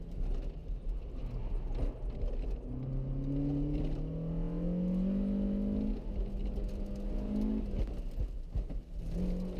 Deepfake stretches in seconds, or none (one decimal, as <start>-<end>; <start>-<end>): 0.6-1.2